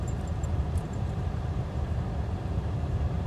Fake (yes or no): yes